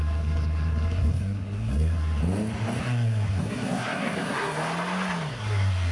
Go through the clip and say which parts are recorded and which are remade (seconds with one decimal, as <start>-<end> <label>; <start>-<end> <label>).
0.0-2.2 remade; 2.2-2.8 recorded; 2.8-4.6 remade; 4.6-5.3 recorded; 5.3-5.9 remade